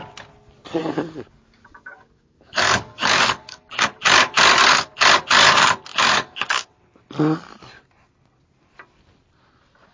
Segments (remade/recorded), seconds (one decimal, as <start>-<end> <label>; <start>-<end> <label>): 0.0-0.8 recorded; 0.8-3.7 remade; 3.7-5.9 recorded; 5.9-6.6 remade; 6.6-9.9 recorded